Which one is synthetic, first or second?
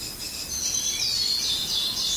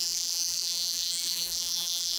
second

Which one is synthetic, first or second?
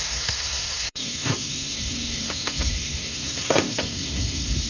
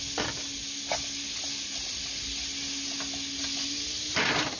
first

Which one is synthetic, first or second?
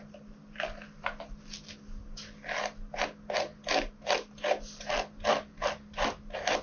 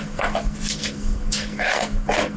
second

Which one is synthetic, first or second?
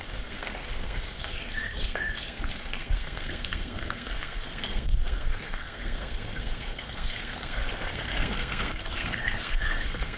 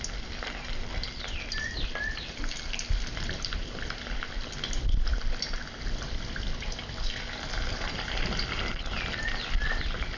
first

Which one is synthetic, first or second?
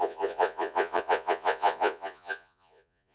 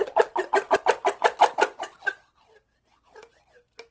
first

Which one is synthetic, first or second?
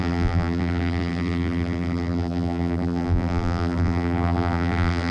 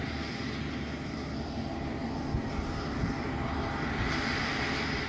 first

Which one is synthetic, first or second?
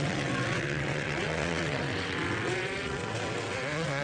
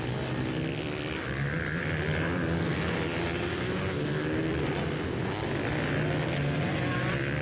first